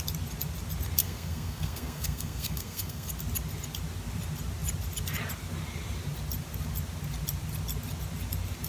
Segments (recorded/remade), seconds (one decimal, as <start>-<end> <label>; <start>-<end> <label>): 0.0-1.0 recorded; 1.0-3.1 remade; 3.1-8.7 recorded